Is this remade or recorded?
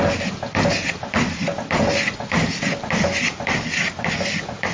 recorded